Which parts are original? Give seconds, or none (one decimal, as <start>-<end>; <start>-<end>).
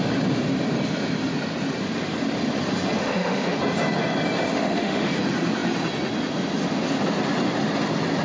0.0-3.0; 3.6-4.5; 5.1-8.2